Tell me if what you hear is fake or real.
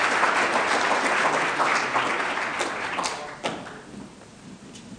real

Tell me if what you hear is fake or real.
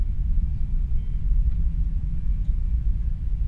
real